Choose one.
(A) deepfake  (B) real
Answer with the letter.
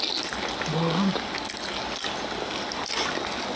B